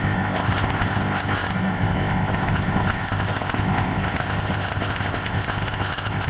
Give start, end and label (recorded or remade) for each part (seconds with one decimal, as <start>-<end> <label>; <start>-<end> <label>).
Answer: 0.0-6.3 remade